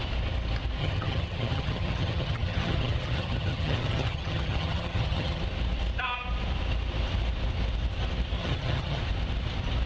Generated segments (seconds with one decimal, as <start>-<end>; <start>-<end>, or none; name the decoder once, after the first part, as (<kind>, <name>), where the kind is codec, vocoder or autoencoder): 0.8-5.4 (vocoder, HiFi-GAN); 8.4-9.0

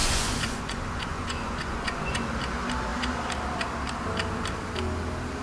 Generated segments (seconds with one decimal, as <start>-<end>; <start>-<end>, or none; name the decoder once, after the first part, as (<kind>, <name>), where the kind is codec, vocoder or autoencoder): 0.0-2.2 (vocoder, Vocos)

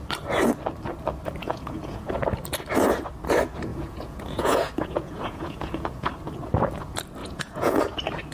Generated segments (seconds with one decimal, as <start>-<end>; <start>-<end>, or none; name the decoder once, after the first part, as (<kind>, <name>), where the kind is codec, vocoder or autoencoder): 1.4-2.2 (vocoder, Vocos); 3.7-6.1; 7.2-7.8